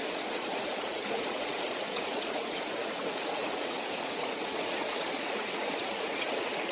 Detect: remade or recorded remade